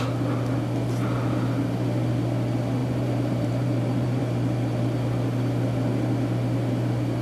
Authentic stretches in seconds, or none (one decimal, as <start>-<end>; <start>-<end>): 0.0-2.8; 4.2-7.2